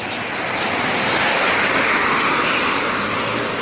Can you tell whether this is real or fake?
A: real